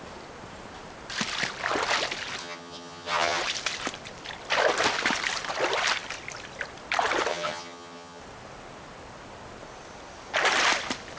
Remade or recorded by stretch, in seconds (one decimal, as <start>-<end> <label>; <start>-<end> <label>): 0.0-2.4 recorded; 2.4-3.4 remade; 3.4-7.3 recorded; 7.3-8.2 remade; 8.2-11.2 recorded